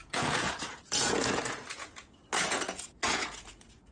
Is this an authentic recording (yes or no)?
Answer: no